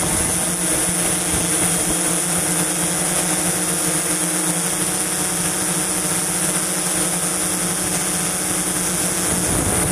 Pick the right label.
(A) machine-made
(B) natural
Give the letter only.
B